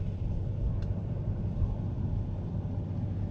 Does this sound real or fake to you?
real